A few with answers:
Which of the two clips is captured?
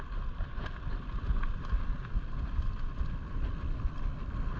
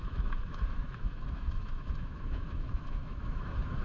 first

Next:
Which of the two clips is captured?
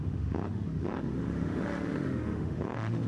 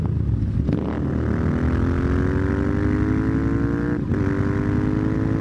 second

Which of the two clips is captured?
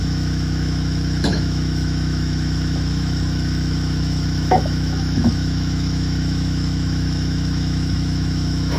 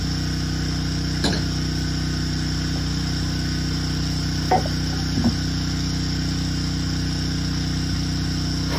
second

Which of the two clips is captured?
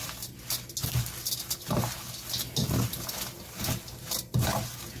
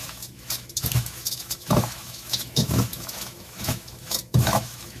first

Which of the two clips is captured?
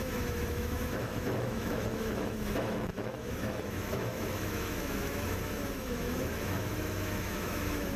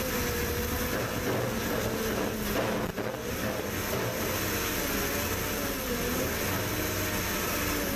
second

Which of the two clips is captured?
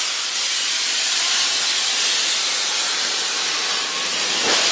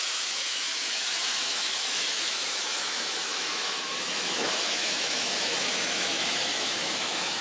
first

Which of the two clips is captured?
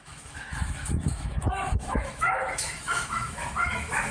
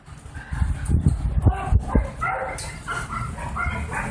second